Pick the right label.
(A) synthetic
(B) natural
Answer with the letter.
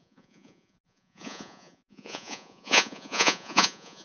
A